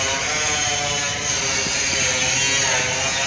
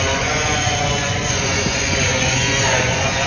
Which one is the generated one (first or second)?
second